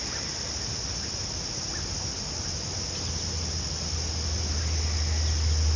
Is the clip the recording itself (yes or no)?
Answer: yes